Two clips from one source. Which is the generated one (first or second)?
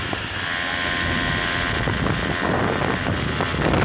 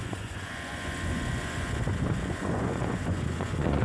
second